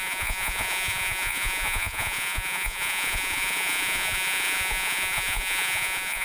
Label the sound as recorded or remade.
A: remade